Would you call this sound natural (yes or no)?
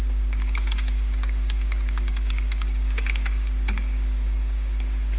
no